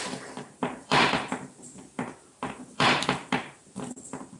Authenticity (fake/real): fake